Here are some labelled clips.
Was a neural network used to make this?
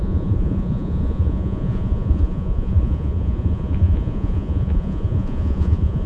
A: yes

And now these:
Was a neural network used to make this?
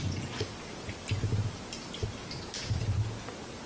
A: no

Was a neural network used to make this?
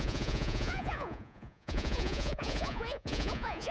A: yes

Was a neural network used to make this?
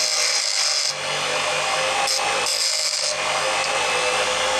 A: no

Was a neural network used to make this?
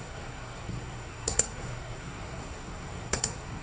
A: yes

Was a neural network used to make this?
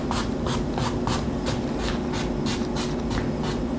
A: no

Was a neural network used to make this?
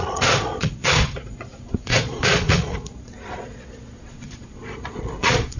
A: yes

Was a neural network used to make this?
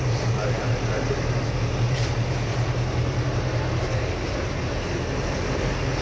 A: yes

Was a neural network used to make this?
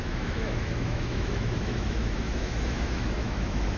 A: yes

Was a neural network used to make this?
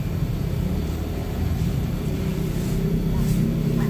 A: yes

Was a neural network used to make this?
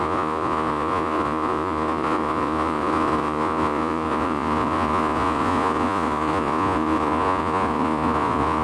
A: yes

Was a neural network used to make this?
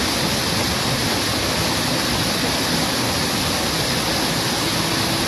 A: no